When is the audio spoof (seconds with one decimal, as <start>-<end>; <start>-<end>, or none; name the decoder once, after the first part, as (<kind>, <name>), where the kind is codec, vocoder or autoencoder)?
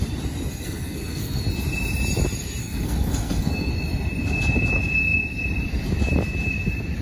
0.5-1.4 (codec, SNAC); 2.6-3.7